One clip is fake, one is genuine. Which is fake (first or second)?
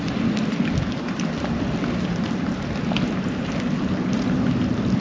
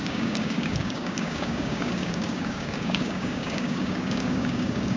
second